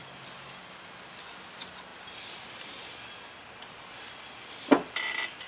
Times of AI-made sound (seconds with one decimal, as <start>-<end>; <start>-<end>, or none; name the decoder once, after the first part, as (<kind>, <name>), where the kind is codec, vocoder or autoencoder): none